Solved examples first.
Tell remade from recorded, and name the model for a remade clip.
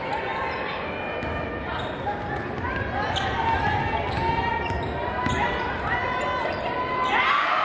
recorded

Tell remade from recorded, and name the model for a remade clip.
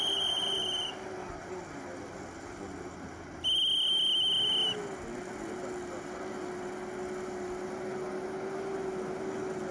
recorded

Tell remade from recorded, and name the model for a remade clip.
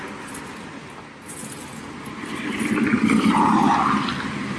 recorded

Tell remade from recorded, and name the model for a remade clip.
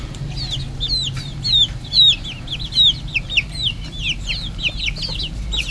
recorded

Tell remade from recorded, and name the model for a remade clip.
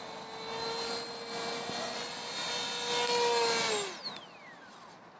recorded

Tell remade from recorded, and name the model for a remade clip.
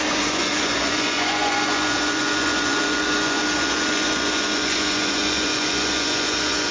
remade, vocoder, Vocos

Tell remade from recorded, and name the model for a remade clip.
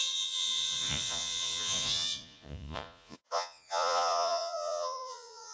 remade, vocoder, Vocos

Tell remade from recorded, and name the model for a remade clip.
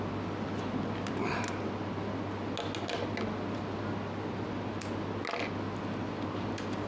recorded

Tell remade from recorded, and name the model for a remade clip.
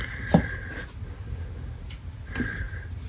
recorded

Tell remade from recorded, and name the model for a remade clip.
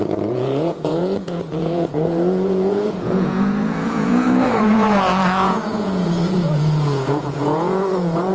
remade, vocoder, Vocos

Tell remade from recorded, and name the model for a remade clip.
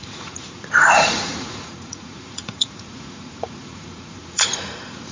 remade, vocoder, Vocos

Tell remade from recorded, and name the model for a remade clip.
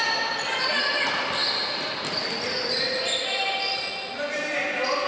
recorded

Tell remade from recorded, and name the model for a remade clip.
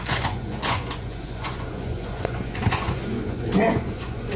remade, vocoder, Vocos